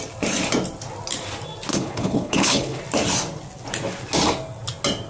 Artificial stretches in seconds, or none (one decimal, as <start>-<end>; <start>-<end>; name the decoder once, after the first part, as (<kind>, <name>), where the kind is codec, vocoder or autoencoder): 1.7-2.8 (codec, HILCodec)